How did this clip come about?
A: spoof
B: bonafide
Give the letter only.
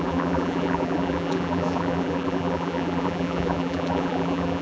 A